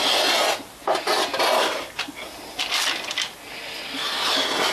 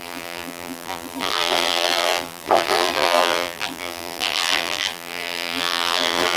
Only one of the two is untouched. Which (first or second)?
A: first